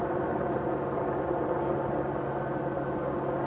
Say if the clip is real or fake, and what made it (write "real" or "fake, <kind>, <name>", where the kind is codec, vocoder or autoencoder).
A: real